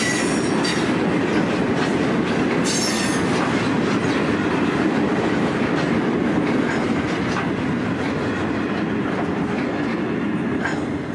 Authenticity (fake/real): real